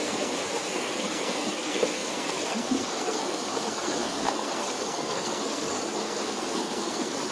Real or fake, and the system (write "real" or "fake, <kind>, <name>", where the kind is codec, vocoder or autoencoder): fake, codec, SNAC